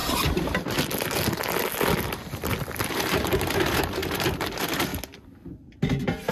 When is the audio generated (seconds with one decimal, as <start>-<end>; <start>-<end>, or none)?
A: 2.9-4.9